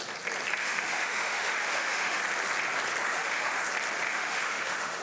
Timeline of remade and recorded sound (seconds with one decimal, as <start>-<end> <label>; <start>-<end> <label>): 0.0-0.6 recorded; 0.6-2.2 remade; 2.2-3.1 recorded; 3.1-3.6 remade; 3.6-4.1 recorded; 4.1-5.0 remade